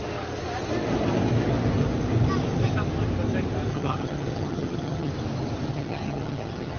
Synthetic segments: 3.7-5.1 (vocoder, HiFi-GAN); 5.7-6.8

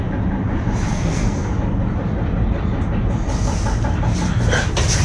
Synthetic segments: 0.9-1.5 (codec, SNAC)

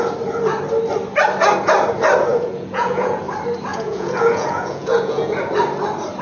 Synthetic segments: 2.3-3.2 (vocoder, Vocos); 3.7-5.3

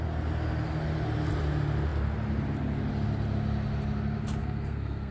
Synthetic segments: 4.4-5.1 (codec, SNAC)

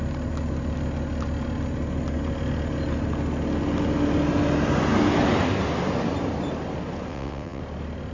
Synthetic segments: 7.1-7.6 (vocoder, WaveNeXt)

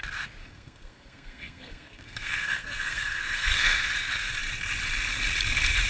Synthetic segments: 0.4-3.9 (codec, SNAC)

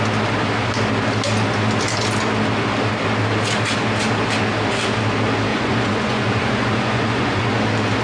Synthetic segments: 5.5-7.6 (vocoder, Vocos)